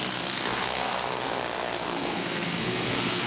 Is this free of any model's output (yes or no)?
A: no